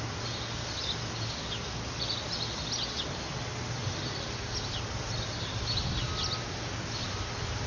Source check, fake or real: real